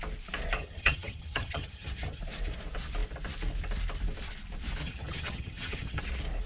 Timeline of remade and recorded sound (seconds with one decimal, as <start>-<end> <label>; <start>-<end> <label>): 0.0-0.6 recorded; 0.6-2.2 remade; 2.2-4.8 recorded; 4.8-6.0 remade; 6.0-6.5 recorded